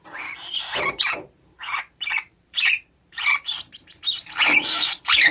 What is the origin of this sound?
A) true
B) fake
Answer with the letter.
B